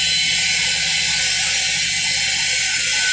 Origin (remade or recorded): recorded